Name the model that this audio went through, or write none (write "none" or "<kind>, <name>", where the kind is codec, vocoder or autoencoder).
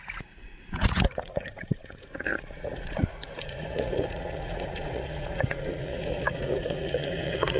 vocoder, Vocos